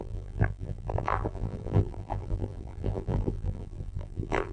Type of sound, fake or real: fake